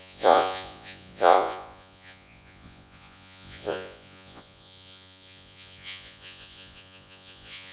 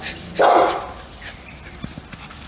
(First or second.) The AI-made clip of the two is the first